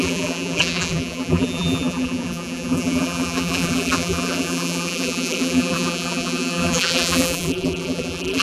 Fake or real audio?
fake